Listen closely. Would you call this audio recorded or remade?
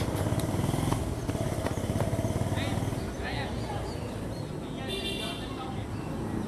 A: recorded